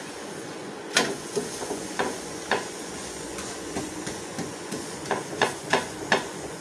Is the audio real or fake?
fake